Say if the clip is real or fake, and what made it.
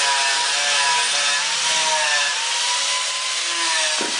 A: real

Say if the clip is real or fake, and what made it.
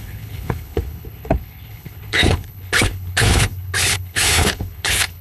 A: fake, codec, HILCodec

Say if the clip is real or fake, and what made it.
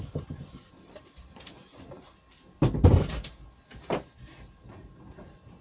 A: real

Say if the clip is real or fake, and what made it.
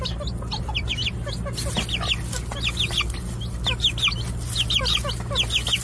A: real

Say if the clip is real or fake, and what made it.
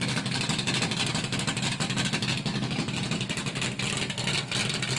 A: real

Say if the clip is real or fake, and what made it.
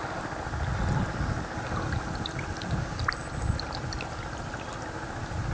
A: real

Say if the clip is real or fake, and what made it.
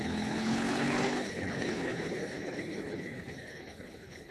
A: fake, codec, HILCodec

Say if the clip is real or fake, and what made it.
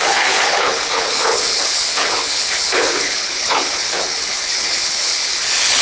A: fake, codec, HILCodec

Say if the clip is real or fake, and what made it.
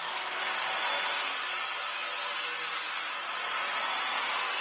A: real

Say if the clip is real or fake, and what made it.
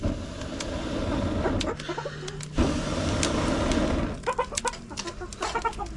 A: real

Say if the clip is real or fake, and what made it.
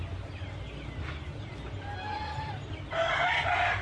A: real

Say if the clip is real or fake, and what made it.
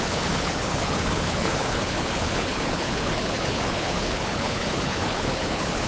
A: fake, codec, HILCodec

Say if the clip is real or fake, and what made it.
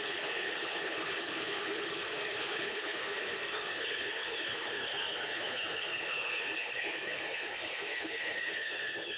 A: fake, codec, HILCodec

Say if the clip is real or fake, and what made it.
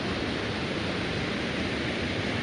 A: real